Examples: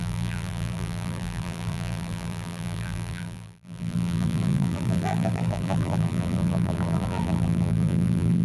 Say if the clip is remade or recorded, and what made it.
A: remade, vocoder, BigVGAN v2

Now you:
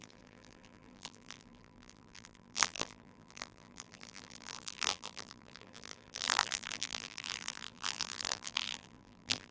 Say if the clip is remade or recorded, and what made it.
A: remade, vocoder, BigVGAN v2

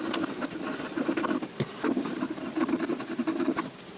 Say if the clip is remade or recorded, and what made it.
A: remade, vocoder, BigVGAN v2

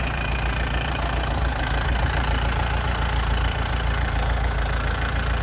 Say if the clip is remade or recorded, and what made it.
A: remade, vocoder, BigVGAN v2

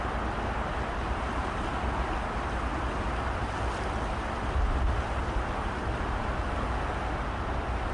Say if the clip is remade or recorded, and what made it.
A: recorded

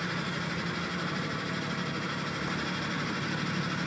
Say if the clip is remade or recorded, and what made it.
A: recorded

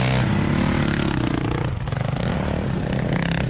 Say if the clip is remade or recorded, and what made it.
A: recorded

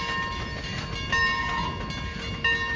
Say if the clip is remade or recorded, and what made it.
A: recorded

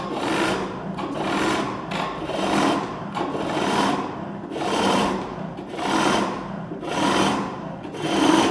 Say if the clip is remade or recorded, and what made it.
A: recorded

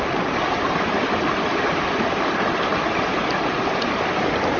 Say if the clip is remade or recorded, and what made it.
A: remade, vocoder, BigVGAN v2